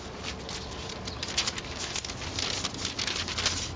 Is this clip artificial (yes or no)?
no